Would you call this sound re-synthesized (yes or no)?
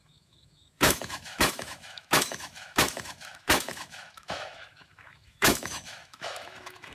yes